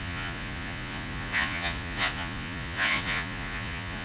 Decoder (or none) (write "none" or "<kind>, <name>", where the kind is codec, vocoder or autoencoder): vocoder, Vocos